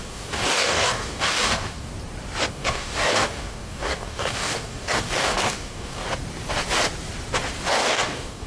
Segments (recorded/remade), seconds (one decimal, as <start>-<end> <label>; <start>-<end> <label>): 0.0-1.9 remade; 1.9-2.5 recorded; 2.5-6.0 remade; 6.0-7.7 recorded; 7.7-8.5 remade